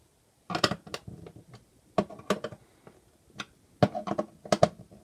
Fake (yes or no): no